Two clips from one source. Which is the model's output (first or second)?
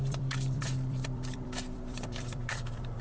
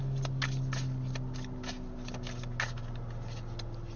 first